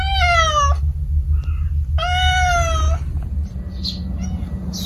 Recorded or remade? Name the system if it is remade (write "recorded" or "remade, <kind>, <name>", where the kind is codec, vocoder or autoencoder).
recorded